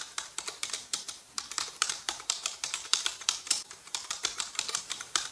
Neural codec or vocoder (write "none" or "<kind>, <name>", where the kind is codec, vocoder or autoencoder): vocoder, BigVGAN v2